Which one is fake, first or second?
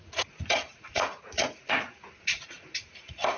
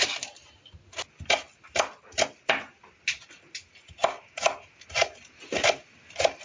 first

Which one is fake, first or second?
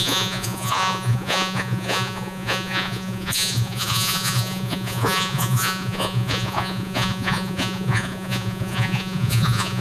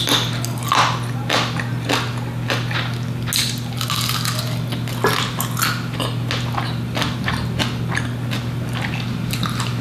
first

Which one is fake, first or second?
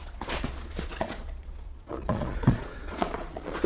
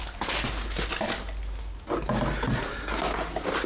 first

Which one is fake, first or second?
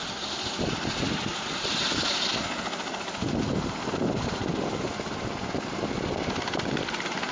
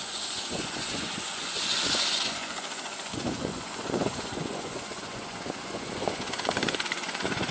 second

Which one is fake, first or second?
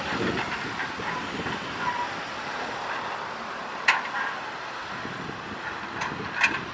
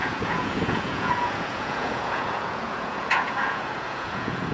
second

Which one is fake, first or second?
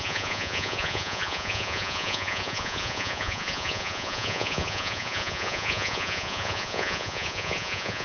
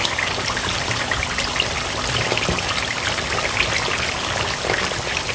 first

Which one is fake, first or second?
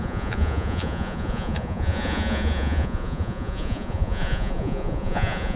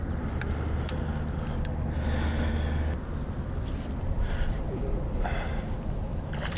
first